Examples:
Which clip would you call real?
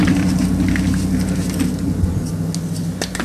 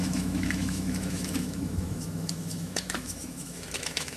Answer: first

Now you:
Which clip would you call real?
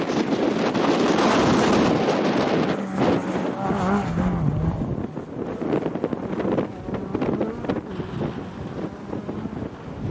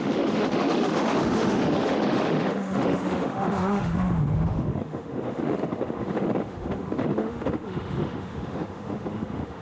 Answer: first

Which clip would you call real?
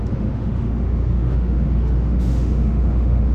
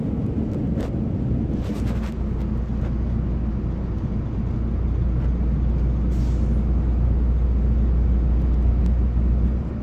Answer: second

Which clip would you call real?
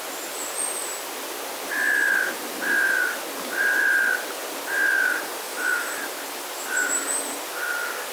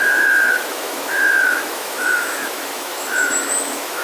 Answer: first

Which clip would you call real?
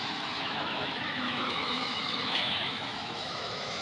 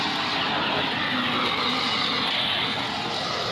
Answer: second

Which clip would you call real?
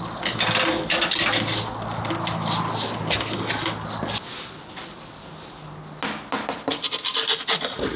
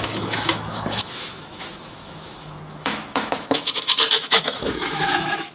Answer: first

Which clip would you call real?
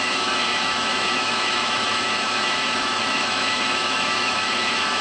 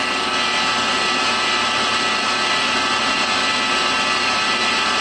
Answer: second